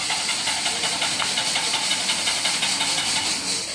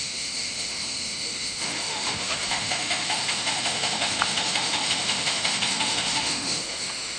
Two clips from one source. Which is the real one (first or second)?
first